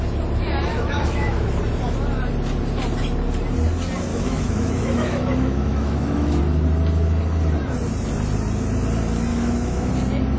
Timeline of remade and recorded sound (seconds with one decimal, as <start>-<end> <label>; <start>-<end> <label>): 0.0-0.7 recorded; 0.7-1.6 remade; 1.6-4.1 recorded; 4.1-6.4 remade; 6.4-9.3 recorded; 9.3-9.9 remade; 9.9-10.4 recorded